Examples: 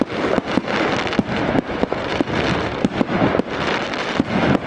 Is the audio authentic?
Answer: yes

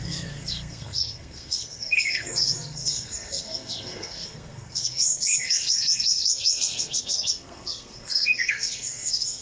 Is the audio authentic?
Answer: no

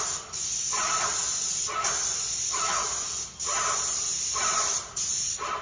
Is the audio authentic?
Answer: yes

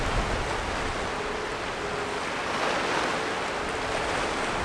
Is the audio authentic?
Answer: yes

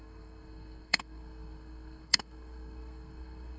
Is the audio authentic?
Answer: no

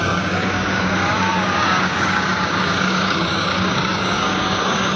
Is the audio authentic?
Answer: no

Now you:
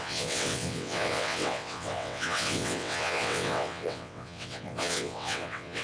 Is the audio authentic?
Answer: no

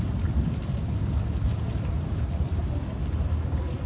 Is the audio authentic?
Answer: yes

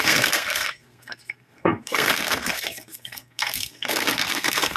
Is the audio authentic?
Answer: no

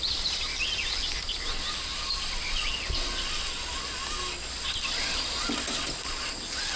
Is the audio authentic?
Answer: yes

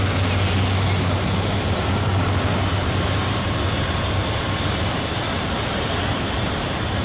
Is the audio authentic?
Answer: yes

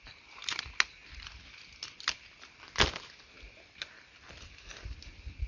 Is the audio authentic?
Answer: yes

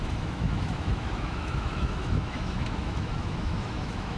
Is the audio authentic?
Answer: no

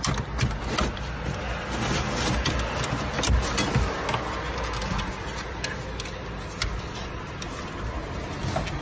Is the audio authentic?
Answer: yes